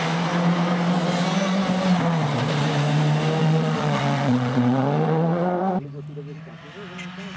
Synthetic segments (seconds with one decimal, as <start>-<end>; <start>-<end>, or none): 3.4-5.7